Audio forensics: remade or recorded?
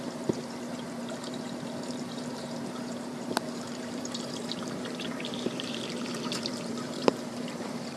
remade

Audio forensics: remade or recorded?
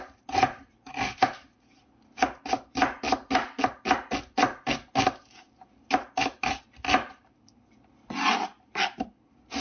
recorded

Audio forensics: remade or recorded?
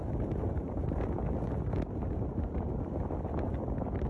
recorded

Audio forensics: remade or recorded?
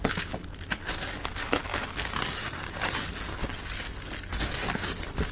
recorded